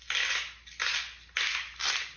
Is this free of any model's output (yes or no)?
yes